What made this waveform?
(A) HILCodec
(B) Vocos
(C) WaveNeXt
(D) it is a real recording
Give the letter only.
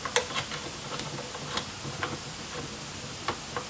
D